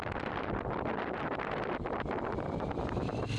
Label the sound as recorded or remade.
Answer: remade